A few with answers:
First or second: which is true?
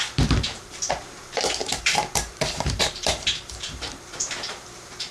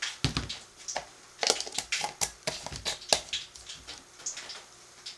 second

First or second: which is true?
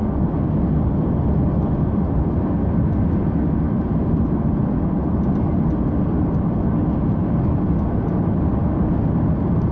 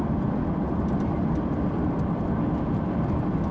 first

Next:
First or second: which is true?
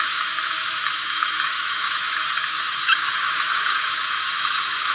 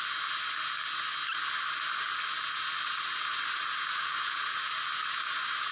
second